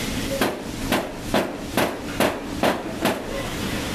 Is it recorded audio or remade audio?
recorded